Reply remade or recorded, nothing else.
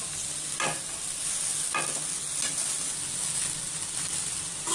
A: recorded